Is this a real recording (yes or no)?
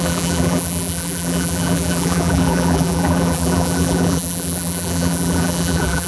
no